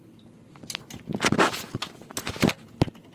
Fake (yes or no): no